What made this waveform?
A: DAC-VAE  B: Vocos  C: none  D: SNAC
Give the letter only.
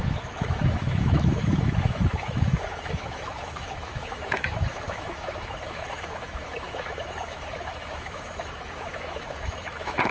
A